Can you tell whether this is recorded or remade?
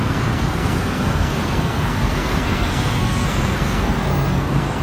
remade